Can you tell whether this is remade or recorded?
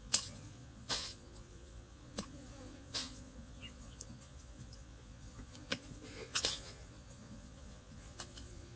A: remade